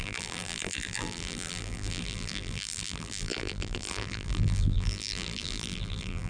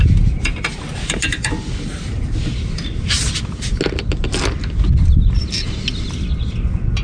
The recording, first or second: second